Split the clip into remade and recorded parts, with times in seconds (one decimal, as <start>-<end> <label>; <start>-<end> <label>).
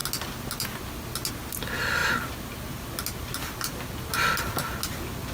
0.0-5.3 recorded